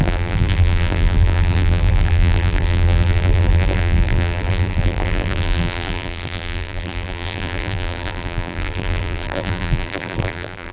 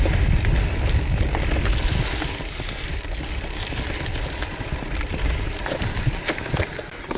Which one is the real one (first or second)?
second